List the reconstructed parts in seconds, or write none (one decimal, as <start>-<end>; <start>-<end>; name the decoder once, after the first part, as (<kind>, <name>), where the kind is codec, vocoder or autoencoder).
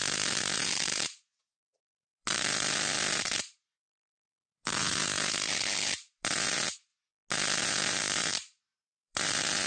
0.0-6.9 (vocoder, BigVGAN v2); 7.6-9.7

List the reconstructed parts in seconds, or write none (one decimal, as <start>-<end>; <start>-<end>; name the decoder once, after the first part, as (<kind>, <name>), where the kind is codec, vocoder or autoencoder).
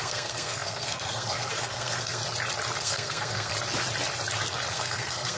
0.0-2.2 (codec, SNAC); 2.8-3.5; 4.7-5.4